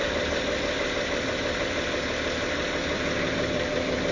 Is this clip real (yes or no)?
no